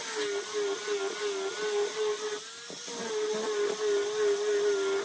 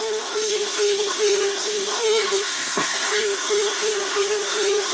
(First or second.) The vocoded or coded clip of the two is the second